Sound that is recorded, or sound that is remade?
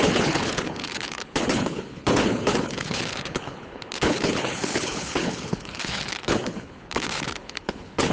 remade